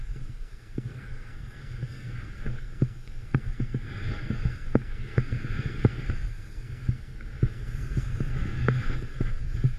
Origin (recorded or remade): remade